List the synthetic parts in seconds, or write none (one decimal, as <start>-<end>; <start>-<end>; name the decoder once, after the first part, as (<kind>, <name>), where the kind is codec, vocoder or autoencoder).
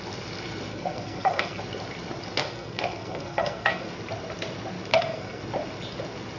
0.7-1.6 (codec, SNAC); 2.4-3.9; 4.9-5.4